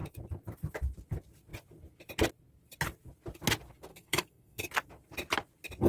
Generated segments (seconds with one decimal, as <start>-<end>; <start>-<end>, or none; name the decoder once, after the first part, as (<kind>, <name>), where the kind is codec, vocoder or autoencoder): 3.9-4.7 (codec, SNAC)